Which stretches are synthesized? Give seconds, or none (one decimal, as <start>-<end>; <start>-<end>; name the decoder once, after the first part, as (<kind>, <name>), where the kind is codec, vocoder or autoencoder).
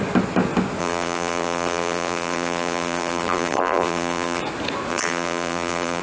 0.8-4.4 (vocoder, BigVGAN v2); 4.9-6.0